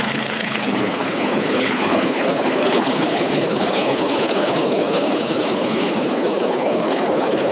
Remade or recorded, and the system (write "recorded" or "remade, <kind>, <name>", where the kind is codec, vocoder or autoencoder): remade, codec, HILCodec